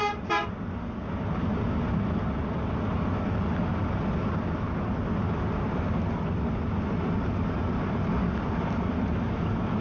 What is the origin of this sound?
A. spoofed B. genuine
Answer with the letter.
B